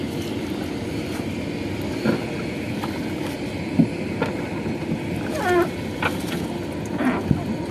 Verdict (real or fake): real